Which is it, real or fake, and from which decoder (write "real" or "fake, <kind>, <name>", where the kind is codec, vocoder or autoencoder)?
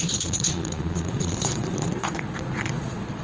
fake, vocoder, Vocos